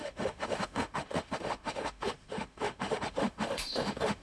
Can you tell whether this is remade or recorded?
remade